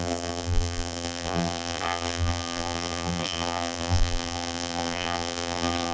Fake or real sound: fake